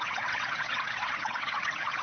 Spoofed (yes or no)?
yes